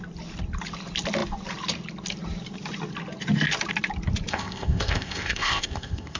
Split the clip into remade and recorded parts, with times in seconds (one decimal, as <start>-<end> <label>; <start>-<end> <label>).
0.0-4.3 recorded; 4.3-6.2 remade